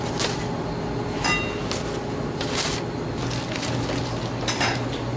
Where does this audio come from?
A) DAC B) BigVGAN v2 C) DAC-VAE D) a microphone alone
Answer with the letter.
D